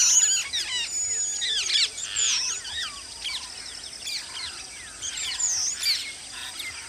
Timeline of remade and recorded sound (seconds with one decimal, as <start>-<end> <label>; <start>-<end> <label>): 0.0-6.9 recorded